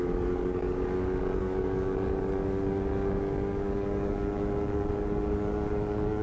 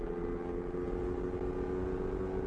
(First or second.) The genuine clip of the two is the second